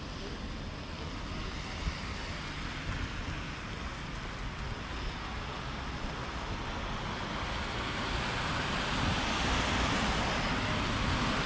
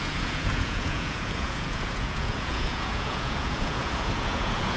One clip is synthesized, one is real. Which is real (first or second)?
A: first